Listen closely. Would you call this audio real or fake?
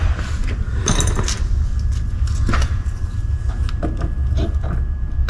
real